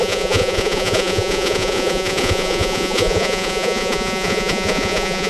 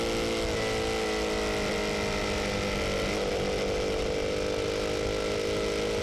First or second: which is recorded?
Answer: second